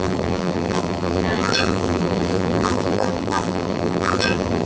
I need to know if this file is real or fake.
fake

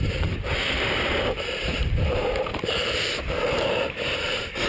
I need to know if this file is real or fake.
fake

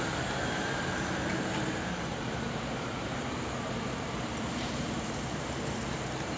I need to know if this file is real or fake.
fake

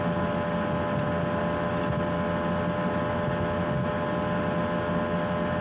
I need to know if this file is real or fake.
real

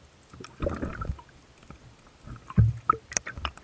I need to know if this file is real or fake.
real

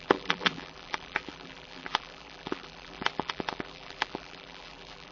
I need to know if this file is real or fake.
fake